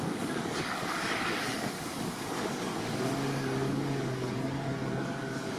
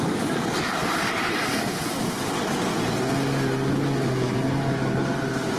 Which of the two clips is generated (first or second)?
first